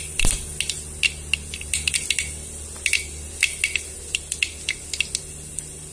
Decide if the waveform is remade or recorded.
recorded